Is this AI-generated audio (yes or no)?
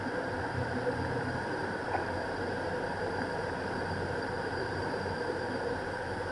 yes